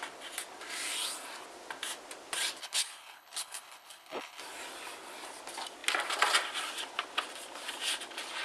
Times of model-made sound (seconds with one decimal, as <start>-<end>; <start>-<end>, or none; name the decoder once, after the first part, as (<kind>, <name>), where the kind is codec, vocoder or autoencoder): 2.6-4.4 (codec, HILCodec)